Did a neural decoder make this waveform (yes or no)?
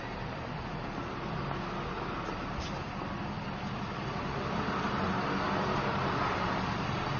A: no